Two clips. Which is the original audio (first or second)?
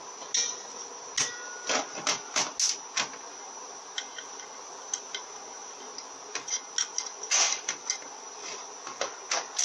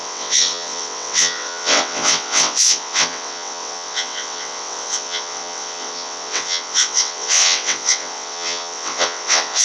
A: first